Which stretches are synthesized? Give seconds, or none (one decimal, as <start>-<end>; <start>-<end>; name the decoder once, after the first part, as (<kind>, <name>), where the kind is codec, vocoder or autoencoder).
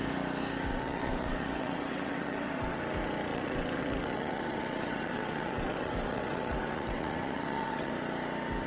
0.7-2.8 (vocoder, WaveNeXt); 3.3-7.9